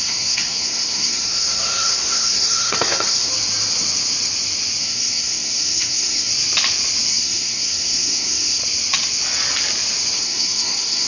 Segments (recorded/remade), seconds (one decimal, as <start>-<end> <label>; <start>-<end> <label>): 0.0-3.3 remade; 3.3-4.8 recorded; 4.8-6.3 remade; 6.3-7.1 recorded; 7.1-8.6 remade; 8.6-10.2 recorded; 10.2-11.1 remade